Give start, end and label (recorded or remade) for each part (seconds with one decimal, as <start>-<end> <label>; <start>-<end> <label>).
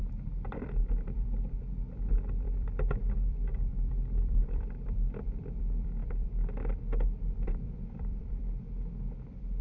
0.0-9.6 remade